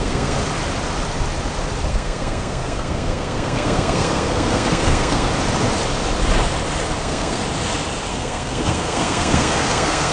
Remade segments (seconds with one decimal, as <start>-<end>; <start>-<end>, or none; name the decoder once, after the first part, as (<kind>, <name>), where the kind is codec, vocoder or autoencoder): 0.0-0.4 (codec, SNAC); 1.9-5.3; 7.0-7.4; 8.1-10.1